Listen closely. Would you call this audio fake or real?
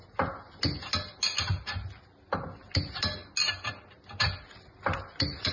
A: real